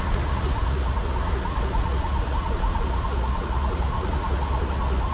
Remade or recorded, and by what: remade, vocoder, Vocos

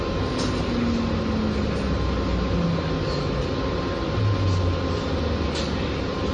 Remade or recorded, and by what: recorded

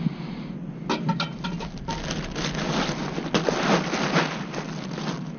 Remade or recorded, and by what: recorded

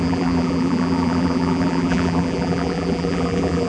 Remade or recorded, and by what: remade, vocoder, BigVGAN v2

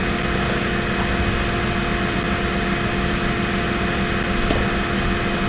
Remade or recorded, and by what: recorded